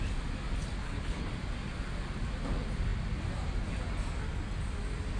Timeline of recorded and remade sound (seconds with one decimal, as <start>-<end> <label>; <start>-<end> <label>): 0.0-0.8 recorded; 0.8-1.3 remade; 1.3-5.2 recorded